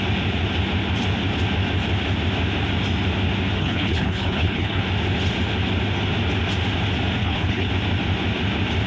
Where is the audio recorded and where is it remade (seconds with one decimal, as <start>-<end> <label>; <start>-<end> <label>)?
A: 0.0-3.6 recorded; 3.6-4.8 remade; 4.8-7.2 recorded; 7.2-7.7 remade; 7.7-8.9 recorded